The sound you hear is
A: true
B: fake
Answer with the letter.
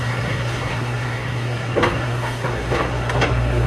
B